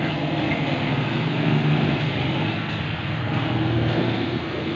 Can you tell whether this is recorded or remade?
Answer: remade